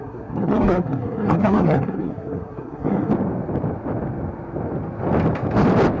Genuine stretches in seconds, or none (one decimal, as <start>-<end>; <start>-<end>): 3.1-6.0